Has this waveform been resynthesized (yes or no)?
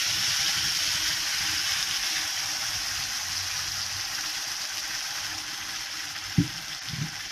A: no